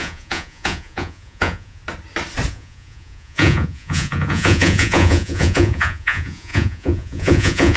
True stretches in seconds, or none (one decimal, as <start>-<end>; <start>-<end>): 1.8-2.5